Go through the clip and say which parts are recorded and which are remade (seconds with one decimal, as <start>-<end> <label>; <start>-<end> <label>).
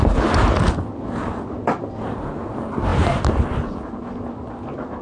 0.0-5.0 recorded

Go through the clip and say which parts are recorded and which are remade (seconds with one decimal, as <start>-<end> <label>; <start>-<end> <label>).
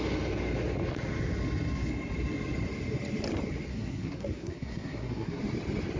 0.0-3.7 recorded; 3.7-5.4 remade; 5.4-6.0 recorded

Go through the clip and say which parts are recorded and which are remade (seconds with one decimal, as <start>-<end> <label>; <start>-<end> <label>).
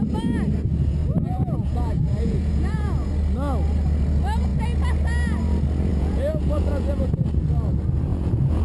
0.0-1.0 recorded; 1.0-3.1 remade; 3.1-5.9 recorded; 5.9-7.1 remade; 7.1-8.1 recorded; 8.1-8.6 remade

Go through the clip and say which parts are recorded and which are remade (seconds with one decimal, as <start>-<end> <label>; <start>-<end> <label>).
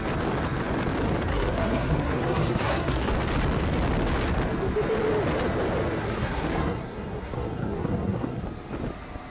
0.0-1.3 recorded; 1.3-3.1 remade; 3.1-6.0 recorded; 6.0-8.4 remade; 8.4-9.3 recorded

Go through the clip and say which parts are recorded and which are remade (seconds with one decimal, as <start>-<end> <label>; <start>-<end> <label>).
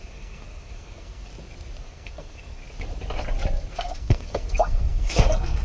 0.0-1.3 remade; 1.3-1.8 recorded; 1.8-2.6 remade; 2.6-3.7 recorded; 3.7-5.6 remade